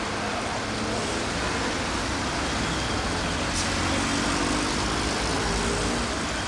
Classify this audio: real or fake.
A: real